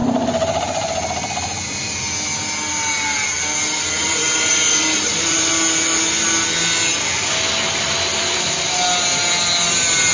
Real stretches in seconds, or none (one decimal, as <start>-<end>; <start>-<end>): 1.9-4.0; 5.5-8.1; 8.8-10.1